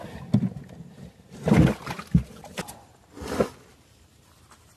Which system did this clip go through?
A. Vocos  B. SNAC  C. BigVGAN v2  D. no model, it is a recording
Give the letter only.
D